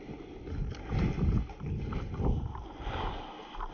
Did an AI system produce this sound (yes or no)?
no